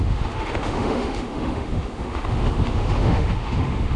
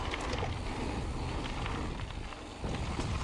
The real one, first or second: second